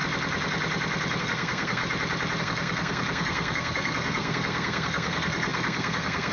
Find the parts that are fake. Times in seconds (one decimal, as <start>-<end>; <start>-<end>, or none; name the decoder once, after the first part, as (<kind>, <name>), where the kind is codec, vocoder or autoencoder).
1.2-1.8 (codec, SNAC); 2.4-6.3